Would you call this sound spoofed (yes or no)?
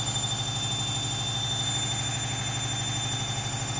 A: no